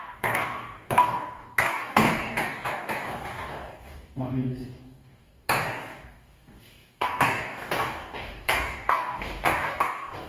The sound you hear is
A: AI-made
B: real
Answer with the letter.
A